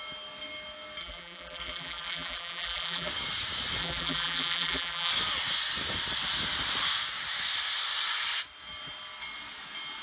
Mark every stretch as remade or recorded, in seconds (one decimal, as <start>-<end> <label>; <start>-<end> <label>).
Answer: 0.0-1.0 recorded; 1.0-3.1 remade; 3.1-3.8 recorded; 3.8-5.1 remade; 5.1-10.0 recorded